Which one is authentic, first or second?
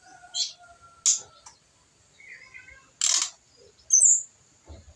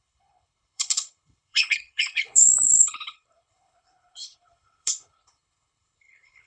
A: first